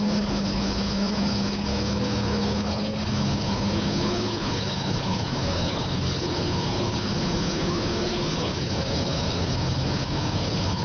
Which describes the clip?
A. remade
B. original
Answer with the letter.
A